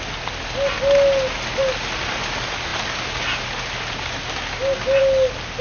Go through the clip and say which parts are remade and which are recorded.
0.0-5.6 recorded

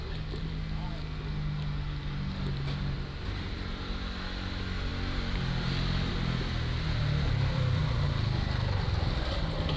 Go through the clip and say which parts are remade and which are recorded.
0.0-9.8 recorded